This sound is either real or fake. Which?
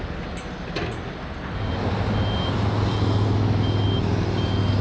real